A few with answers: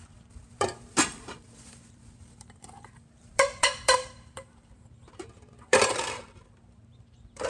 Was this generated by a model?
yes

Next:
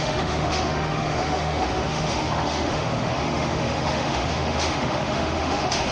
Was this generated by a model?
yes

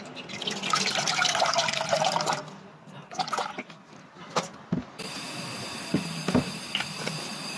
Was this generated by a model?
no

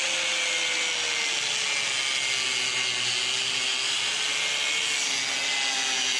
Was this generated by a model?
no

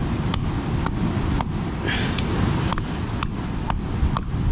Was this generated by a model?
no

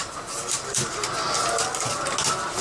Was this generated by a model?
no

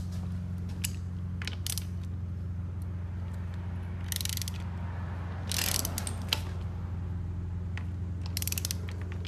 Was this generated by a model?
no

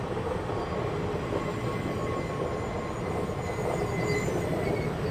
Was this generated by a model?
no